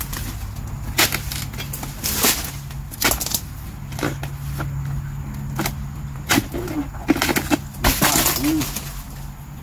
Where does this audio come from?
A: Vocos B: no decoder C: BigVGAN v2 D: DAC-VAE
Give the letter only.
B